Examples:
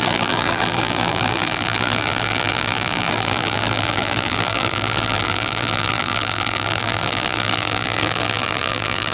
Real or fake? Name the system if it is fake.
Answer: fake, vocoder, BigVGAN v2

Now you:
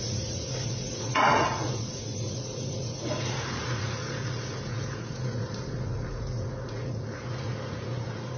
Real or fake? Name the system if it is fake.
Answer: fake, vocoder, Vocos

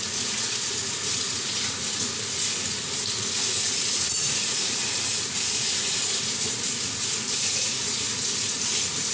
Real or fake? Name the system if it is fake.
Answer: fake, vocoder, Vocos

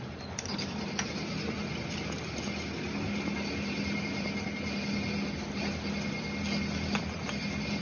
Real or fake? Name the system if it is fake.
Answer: real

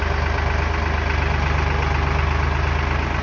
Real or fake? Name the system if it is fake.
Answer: real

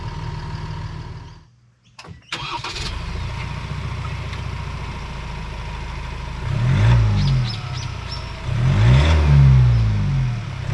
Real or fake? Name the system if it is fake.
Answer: real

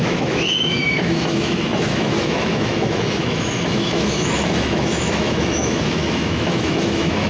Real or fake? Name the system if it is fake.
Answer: fake, autoencoder, DAC-VAE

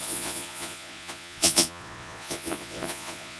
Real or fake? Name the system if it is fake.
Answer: fake, vocoder, Vocos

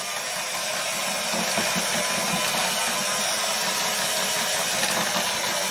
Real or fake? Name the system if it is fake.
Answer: real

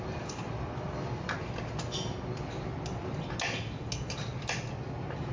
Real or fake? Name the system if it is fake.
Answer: real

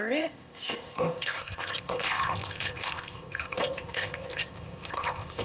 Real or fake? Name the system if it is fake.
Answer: fake, codec, ZipCodec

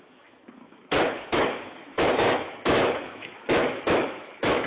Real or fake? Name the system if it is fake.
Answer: fake, autoencoder, DAC-VAE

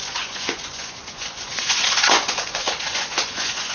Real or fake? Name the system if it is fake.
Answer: fake, vocoder, Vocos